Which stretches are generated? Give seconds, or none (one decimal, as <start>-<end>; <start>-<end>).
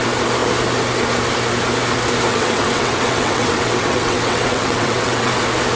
2.3-5.3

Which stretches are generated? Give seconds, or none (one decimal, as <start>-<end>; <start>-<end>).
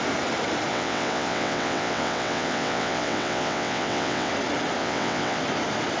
0.7-4.3; 4.8-5.4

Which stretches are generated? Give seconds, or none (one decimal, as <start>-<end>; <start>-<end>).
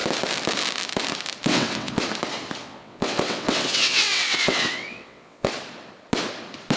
1.5-2.0; 2.6-5.5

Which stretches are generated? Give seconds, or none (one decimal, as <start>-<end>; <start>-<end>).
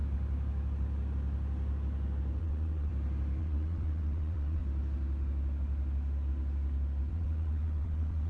2.4-2.9; 3.4-4.6; 7.1-8.3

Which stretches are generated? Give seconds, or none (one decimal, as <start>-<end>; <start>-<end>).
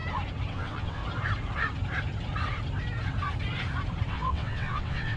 0.5-1.0; 4.1-5.2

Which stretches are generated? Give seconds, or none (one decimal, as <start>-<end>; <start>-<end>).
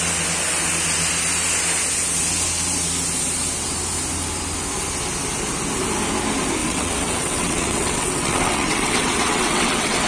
6.6-10.1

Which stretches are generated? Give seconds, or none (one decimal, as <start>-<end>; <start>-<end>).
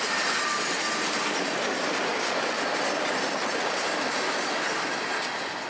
none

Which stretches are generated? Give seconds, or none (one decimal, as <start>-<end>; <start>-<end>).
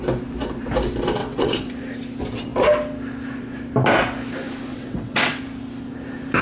1.2-1.7; 4.7-5.4